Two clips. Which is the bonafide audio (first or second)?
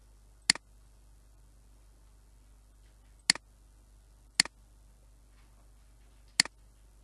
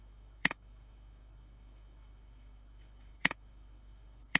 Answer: first